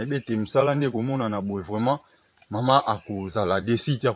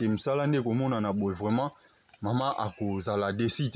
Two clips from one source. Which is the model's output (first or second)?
first